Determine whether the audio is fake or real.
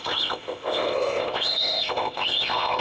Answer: fake